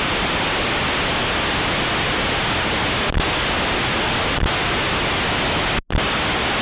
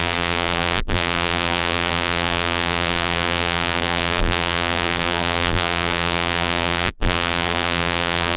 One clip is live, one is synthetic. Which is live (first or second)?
first